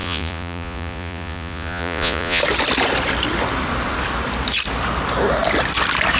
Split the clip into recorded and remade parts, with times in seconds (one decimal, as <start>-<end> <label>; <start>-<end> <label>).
0.0-2.4 remade; 2.4-6.2 recorded